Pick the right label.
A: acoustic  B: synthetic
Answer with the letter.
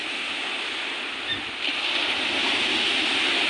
A